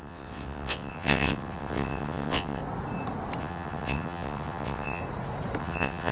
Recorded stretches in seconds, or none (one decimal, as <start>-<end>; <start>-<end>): 2.6-3.4; 5.0-5.6